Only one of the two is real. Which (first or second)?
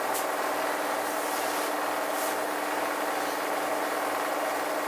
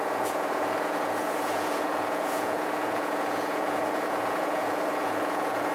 first